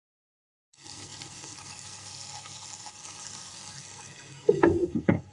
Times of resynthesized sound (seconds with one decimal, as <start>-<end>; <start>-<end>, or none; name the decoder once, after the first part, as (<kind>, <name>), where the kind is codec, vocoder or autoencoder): 0.0-5.3 (codec, SNAC)